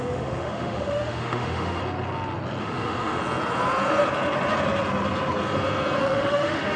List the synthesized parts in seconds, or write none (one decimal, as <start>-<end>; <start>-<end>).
0.0-1.8; 2.6-3.2; 6.0-6.8